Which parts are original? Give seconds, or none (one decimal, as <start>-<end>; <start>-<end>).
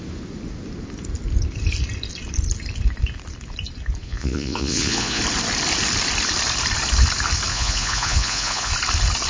0.0-4.0; 5.2-7.5; 8.7-9.3